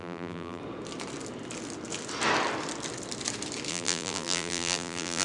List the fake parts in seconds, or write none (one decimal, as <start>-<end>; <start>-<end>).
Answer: 0.0-0.6; 3.7-5.2